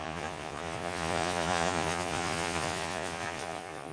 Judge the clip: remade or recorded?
remade